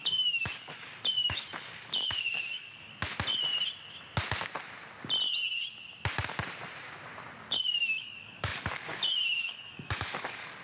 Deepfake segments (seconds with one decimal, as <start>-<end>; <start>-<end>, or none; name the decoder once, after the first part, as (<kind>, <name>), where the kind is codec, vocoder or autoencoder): 0.0-2.9 (codec, DAC); 7.5-10.6